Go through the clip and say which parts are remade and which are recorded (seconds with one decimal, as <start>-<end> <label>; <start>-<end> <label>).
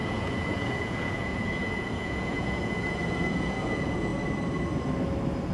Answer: 0.0-4.1 remade; 4.1-5.5 recorded